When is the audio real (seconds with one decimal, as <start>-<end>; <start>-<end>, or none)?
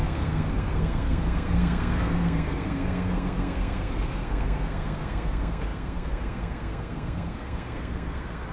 none